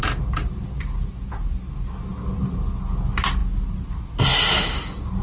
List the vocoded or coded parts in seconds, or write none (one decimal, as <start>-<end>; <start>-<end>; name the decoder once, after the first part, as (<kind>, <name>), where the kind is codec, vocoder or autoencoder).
none